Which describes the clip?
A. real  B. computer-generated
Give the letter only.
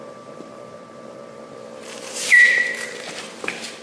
B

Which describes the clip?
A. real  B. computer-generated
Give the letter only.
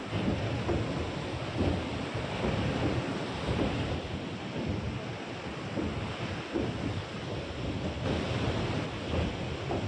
A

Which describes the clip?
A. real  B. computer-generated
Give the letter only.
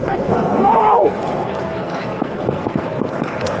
B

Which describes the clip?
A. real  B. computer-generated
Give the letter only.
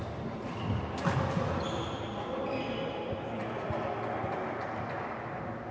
A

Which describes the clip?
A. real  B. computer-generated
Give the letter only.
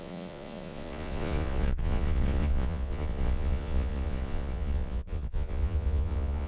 B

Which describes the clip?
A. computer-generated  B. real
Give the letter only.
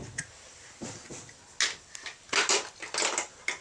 B